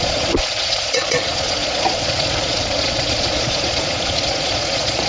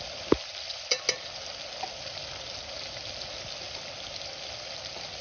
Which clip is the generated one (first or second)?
first